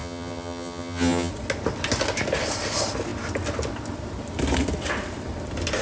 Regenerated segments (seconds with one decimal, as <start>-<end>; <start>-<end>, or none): 0.0-1.3